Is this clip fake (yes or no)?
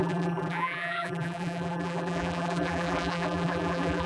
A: yes